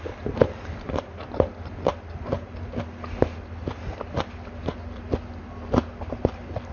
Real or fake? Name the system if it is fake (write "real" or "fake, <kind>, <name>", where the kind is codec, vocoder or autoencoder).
real